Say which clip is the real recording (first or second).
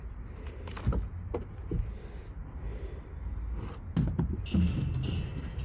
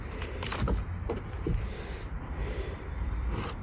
first